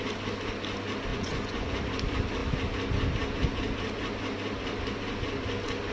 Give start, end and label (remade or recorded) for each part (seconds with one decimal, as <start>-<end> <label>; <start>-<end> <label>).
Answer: 0.0-1.1 recorded; 1.1-1.8 remade; 1.8-5.9 recorded